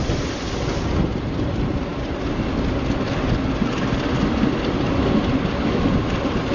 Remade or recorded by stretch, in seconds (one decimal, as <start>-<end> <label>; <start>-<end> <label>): 0.0-6.5 recorded